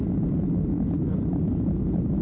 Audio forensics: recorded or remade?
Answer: recorded